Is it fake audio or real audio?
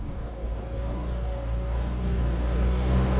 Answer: fake